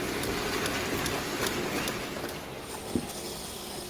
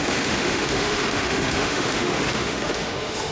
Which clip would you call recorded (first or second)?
first